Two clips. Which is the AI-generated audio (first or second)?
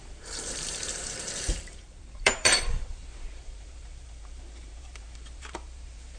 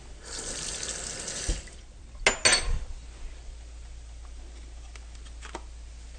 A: first